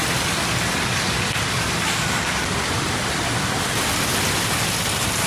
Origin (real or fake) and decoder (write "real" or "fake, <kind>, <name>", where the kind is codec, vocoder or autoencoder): real